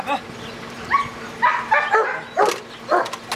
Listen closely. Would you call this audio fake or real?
real